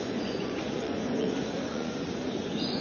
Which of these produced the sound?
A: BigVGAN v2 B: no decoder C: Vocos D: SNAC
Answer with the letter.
C